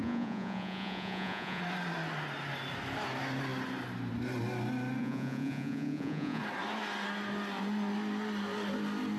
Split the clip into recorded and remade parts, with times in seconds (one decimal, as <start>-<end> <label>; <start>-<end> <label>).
0.0-1.6 remade; 1.6-5.0 recorded; 5.0-6.4 remade; 6.4-9.2 recorded